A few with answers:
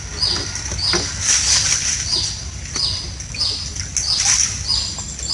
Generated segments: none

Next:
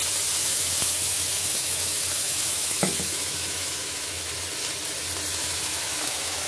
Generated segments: 0.4-4.3 (autoencoder, DAC-VAE); 5.4-6.5

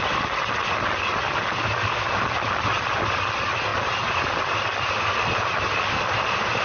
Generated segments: none

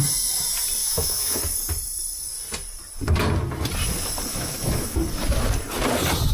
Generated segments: 0.8-1.4 (autoencoder, DAC-VAE); 4.3-5.0

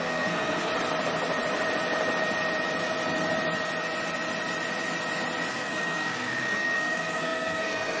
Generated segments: 0.0-0.7 (codec, SNAC); 5.5-8.0

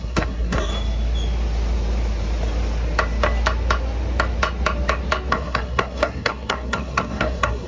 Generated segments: 0.0-0.7 (codec, SNAC); 5.3-7.7